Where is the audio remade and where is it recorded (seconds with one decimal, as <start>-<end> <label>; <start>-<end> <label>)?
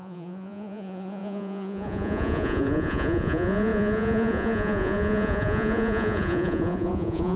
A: 0.0-7.4 remade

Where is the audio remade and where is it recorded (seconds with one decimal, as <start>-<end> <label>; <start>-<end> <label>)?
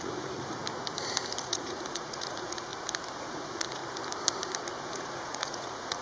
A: 0.0-0.6 remade; 0.6-1.4 recorded; 1.4-2.7 remade; 2.7-3.2 recorded; 3.2-3.8 remade; 3.8-4.8 recorded; 4.8-6.0 remade